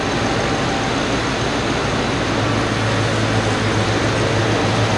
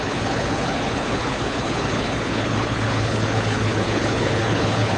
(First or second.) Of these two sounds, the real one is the first